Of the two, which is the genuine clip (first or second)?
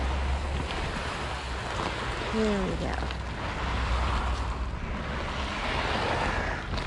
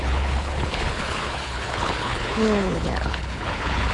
first